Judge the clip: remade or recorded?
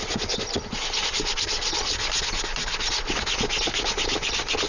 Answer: recorded